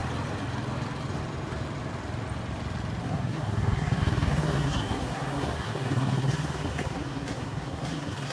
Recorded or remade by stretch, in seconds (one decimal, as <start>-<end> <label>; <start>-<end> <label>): 0.0-3.0 recorded; 3.0-8.3 remade